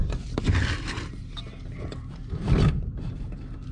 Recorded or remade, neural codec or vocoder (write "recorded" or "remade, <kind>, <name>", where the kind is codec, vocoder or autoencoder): remade, vocoder, BigVGAN v2